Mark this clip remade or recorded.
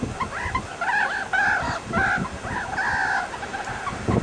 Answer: recorded